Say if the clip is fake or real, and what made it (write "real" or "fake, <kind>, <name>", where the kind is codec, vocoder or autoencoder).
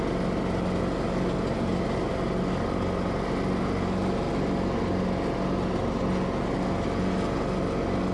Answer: real